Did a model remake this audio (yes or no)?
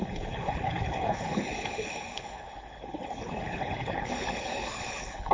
yes